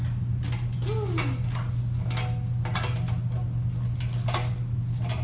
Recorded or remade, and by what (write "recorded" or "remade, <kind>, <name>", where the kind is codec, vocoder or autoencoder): recorded